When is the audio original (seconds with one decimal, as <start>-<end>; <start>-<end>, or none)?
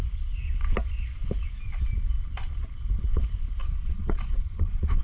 0.0-3.6